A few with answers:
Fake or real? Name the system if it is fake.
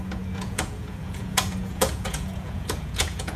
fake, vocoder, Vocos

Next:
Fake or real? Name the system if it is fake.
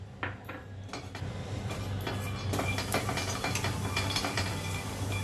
real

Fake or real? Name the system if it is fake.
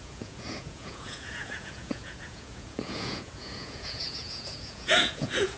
fake, vocoder, Vocos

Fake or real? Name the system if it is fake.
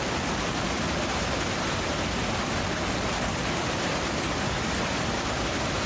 real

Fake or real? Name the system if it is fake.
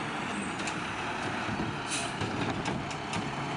real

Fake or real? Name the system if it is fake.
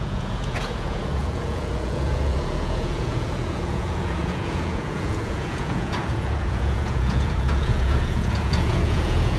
fake, vocoder, Vocos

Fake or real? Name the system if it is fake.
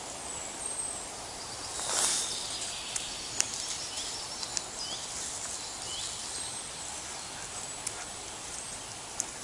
real